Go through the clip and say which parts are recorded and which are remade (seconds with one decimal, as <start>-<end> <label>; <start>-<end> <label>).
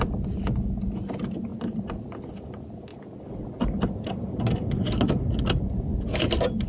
0.0-6.7 recorded